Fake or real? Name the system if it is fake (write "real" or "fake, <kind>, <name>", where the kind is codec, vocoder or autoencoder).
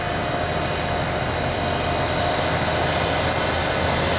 real